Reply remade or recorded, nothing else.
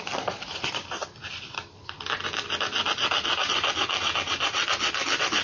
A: recorded